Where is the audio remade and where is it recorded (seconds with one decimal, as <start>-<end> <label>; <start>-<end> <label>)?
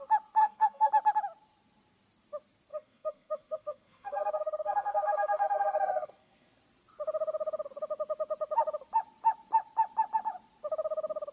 0.0-0.4 recorded; 0.4-0.9 remade; 0.9-2.7 recorded; 2.7-6.6 remade; 6.6-11.3 recorded